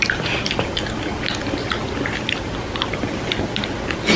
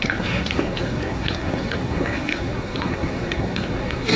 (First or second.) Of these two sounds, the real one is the first